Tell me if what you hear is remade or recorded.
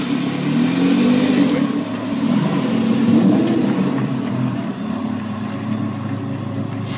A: recorded